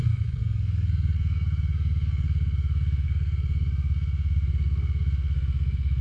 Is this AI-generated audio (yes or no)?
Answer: yes